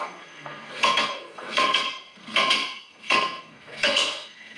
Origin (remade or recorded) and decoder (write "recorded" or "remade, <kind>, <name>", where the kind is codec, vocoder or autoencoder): remade, codec, SNAC